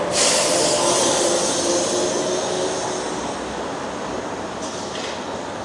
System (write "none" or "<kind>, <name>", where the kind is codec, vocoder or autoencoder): none